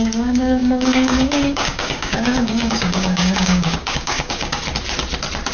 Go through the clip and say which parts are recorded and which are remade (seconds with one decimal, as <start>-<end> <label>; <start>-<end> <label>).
0.0-4.6 remade; 4.6-5.5 recorded